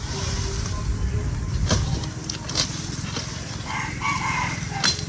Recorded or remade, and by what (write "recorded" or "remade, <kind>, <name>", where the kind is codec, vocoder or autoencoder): recorded